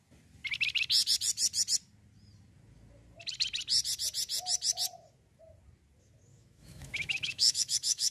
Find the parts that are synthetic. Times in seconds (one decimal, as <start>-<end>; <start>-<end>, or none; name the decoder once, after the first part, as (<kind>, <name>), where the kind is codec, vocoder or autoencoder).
6.3-8.1 (autoencoder, DAC-VAE)